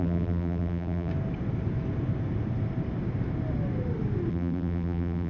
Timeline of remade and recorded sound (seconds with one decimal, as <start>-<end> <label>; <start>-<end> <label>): 0.0-1.1 remade; 1.1-4.3 recorded; 4.3-5.3 remade